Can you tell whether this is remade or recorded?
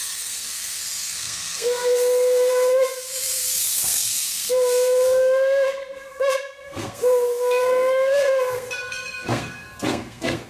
remade